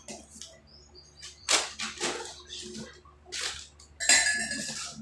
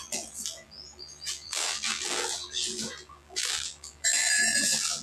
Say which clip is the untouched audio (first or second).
first